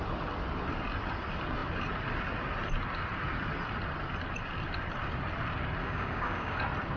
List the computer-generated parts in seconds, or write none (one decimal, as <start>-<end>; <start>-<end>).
5.8-6.6

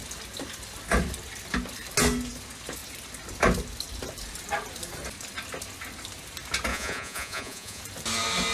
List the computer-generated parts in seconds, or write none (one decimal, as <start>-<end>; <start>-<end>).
6.7-7.8

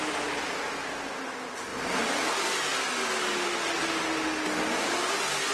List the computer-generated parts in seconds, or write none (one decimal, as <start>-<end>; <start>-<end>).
1.7-2.3

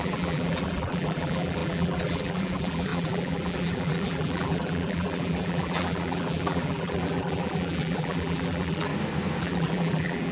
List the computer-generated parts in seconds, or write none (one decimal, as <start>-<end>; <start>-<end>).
0.0-8.9; 9.4-10.3

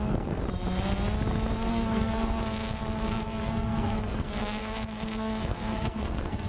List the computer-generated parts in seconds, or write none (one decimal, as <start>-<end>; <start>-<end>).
0.0-0.4; 1.7-6.5

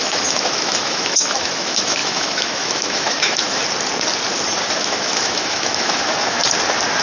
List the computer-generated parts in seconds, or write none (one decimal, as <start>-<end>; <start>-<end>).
0.0-3.6; 4.8-6.4

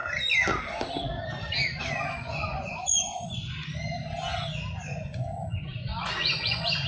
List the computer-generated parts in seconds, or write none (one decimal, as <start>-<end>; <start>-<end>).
1.8-3.4; 4.7-6.9